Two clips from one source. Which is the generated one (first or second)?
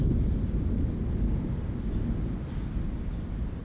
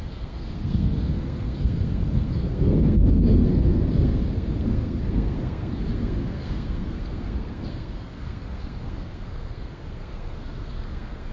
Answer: second